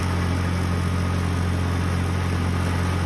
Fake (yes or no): no